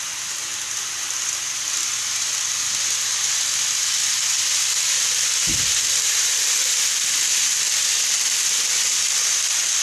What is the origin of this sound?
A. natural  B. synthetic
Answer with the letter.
A